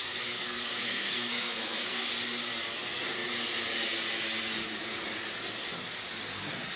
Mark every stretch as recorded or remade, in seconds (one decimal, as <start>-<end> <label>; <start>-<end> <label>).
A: 0.0-2.1 remade; 2.1-6.8 recorded